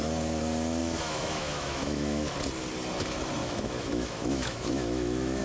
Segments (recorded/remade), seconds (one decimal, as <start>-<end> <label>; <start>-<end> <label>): 0.0-0.8 recorded; 0.8-2.3 remade; 2.3-3.4 recorded; 3.4-5.4 remade